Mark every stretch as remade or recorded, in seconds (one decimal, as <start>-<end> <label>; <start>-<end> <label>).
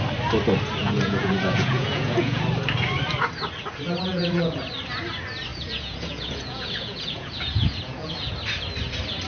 0.0-0.8 recorded; 0.8-2.4 remade; 2.4-4.1 recorded; 4.1-4.6 remade; 4.6-5.5 recorded; 5.5-8.1 remade; 8.1-9.3 recorded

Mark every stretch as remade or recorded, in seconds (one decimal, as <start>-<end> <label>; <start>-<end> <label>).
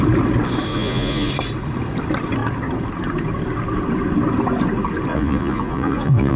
0.0-0.7 recorded; 0.7-1.3 remade; 1.3-5.1 recorded; 5.1-6.4 remade